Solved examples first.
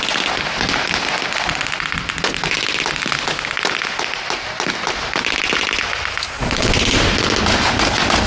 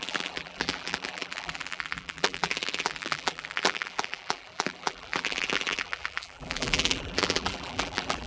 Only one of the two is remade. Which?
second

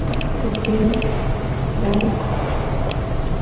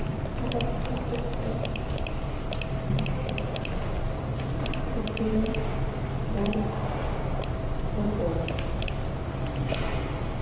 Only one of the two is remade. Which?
first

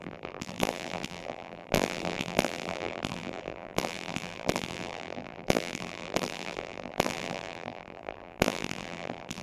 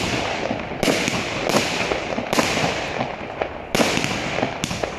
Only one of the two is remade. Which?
first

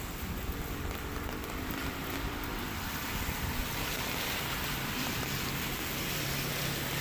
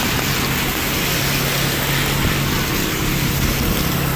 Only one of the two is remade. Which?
first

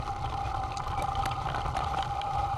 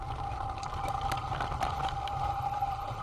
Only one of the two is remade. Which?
first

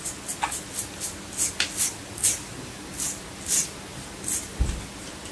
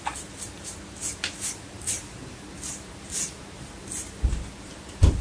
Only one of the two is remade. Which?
second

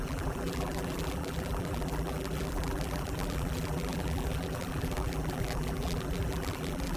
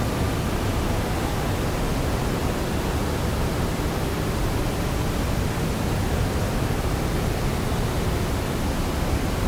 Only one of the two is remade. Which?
first